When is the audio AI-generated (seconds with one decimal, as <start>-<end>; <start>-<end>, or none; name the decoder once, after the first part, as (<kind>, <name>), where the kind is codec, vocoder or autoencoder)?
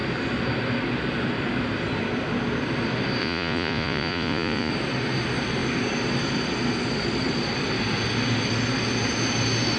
3.2-4.7 (vocoder, Vocos)